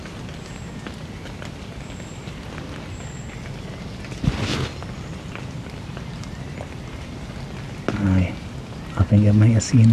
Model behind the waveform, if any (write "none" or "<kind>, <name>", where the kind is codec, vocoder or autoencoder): none